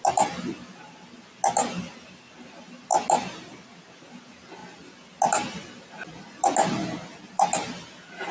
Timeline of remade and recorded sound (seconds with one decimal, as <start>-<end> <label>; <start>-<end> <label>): 0.0-8.3 recorded